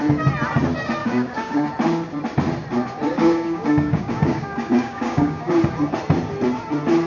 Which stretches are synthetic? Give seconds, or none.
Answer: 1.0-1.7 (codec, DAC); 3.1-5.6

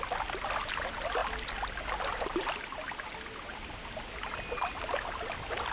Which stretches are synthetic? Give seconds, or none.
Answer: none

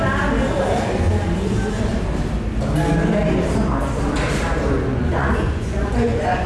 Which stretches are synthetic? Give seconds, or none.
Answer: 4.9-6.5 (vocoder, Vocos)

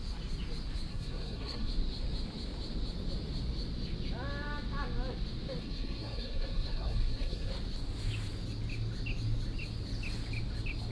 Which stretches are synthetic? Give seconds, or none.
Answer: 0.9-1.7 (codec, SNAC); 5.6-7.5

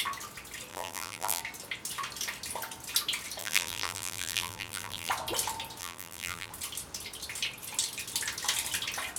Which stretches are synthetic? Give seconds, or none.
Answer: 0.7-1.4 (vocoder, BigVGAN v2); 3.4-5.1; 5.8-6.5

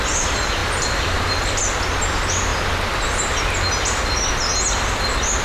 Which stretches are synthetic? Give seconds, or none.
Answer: 0.6-1.5 (vocoder, BigVGAN v2)

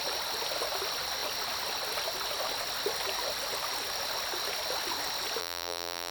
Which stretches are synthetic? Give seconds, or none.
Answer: 5.4-6.1 (vocoder, BigVGAN v2)